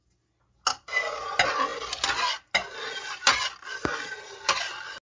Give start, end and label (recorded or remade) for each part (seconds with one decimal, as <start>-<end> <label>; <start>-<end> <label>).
0.0-5.0 recorded